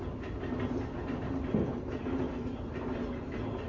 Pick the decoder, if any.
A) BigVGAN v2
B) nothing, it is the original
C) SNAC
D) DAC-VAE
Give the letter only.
B